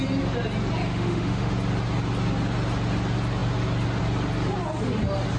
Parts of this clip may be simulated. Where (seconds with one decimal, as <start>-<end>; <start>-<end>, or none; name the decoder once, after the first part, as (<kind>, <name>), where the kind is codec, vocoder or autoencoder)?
0.9-1.5 (autoencoder, DAC-VAE)